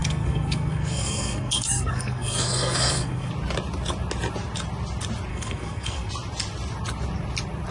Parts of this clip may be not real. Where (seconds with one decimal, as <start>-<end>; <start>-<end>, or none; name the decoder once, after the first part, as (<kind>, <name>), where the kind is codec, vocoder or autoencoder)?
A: 0.0-3.3 (codec, SNAC); 5.3-6.1

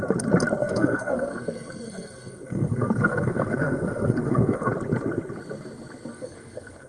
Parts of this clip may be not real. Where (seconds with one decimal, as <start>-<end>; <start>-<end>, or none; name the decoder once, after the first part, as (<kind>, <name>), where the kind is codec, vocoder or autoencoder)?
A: 0.6-4.7 (codec, SNAC); 6.1-6.9

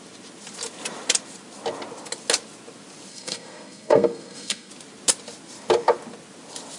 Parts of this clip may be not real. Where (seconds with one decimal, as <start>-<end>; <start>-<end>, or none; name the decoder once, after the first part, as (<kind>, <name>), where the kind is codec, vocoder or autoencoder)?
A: 3.1-4.7 (codec, SNAC)

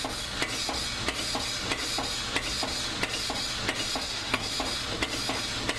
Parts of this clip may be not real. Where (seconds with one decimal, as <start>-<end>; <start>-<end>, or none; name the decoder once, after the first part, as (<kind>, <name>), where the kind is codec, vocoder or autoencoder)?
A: 4.0-4.5 (codec, SNAC)

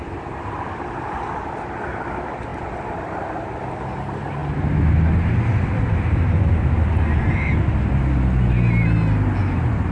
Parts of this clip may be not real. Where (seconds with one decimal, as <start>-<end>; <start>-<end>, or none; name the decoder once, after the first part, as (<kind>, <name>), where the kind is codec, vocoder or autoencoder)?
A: none